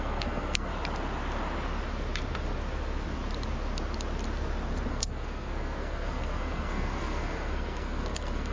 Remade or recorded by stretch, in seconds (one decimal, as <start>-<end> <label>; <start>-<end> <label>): 0.0-0.7 remade; 0.7-4.9 recorded; 4.9-8.5 remade